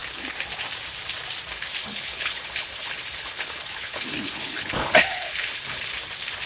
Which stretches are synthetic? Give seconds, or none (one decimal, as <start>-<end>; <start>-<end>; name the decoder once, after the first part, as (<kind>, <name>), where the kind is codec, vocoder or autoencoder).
1.9-5.8 (codec, HILCodec)